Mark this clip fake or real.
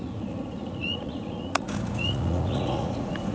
fake